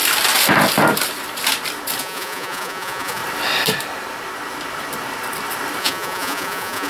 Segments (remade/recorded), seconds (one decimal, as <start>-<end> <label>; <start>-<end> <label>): 0.0-2.0 recorded; 2.0-3.2 remade; 3.2-5.8 recorded; 5.8-6.9 remade